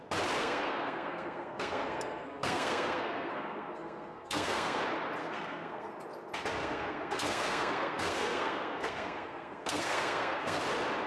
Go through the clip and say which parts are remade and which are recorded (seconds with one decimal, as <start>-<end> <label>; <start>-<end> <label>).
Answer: 0.0-0.4 recorded; 0.4-4.8 remade; 4.8-5.2 recorded; 5.2-5.9 remade; 5.9-6.6 recorded; 6.6-10.6 remade; 10.6-11.1 recorded